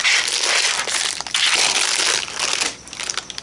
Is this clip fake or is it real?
real